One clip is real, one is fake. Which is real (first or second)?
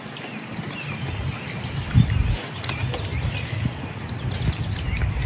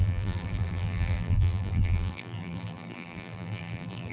first